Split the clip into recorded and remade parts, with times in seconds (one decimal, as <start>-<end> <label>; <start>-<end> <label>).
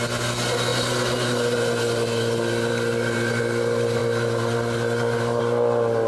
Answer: 0.0-6.1 recorded